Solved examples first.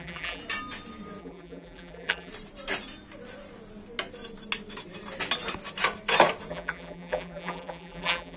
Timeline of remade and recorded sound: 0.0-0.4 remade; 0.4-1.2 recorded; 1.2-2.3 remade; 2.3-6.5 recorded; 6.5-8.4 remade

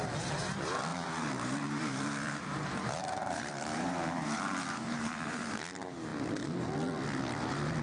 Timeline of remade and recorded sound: 0.0-0.9 recorded; 0.9-5.6 remade; 5.6-7.8 recorded

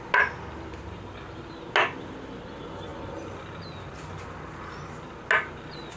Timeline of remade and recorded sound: 0.0-0.7 recorded; 0.7-1.5 remade; 1.5-6.0 recorded